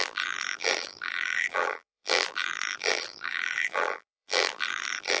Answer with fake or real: fake